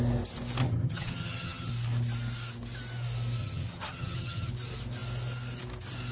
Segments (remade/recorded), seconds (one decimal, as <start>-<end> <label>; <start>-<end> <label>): 0.0-0.6 recorded; 0.6-1.7 remade; 1.7-3.4 recorded; 3.4-4.5 remade; 4.5-6.1 recorded